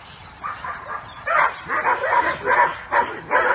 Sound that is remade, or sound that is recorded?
recorded